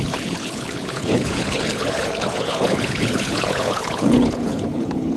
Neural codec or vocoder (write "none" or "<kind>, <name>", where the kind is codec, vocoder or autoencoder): codec, HILCodec